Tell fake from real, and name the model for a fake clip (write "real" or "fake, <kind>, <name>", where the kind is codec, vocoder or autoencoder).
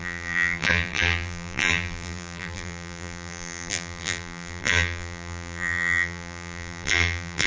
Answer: fake, vocoder, BigVGAN v2